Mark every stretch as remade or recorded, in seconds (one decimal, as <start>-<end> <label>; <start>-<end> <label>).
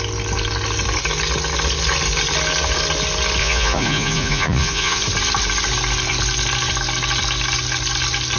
0.0-3.4 recorded; 3.4-5.0 remade; 5.0-8.4 recorded